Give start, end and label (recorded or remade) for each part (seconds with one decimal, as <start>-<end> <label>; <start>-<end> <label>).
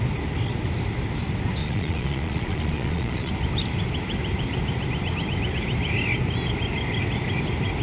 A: 0.0-1.6 recorded; 1.6-3.3 remade; 3.3-7.8 recorded